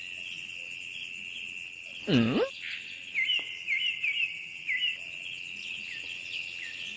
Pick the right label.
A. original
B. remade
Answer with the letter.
A